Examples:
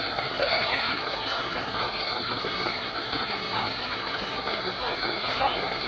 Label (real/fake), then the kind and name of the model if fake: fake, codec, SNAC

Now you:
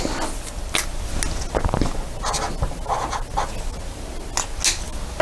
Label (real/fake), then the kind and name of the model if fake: real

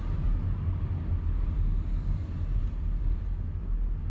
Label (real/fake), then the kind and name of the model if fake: real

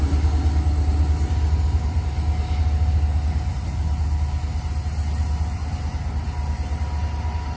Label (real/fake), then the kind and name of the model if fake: real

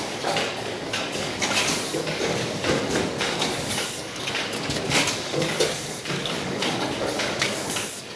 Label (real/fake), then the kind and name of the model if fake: fake, codec, DAC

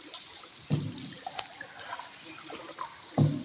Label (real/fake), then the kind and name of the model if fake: real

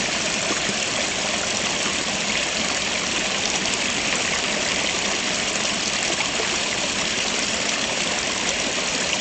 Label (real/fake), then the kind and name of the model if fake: fake, vocoder, BigVGAN v2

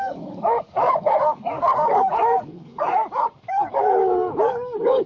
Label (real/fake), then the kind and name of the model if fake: fake, codec, DAC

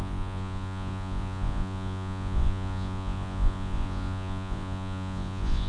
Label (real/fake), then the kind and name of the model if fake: fake, vocoder, Vocos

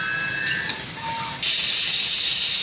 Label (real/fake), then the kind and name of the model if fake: real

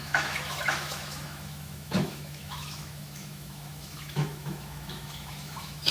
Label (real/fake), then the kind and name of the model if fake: fake, autoencoder, DAC-VAE